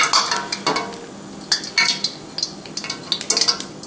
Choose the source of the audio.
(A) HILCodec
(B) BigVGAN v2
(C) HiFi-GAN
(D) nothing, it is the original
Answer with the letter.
D